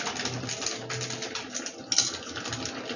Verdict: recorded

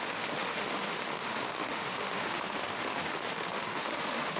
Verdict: remade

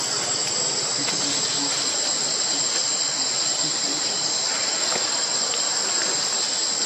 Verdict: recorded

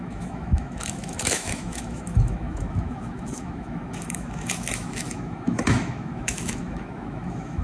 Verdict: remade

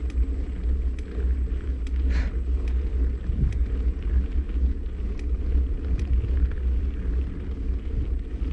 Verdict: recorded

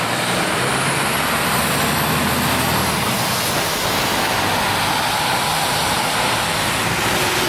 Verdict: recorded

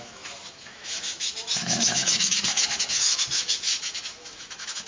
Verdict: remade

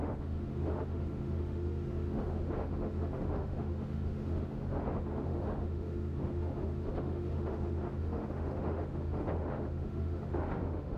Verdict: remade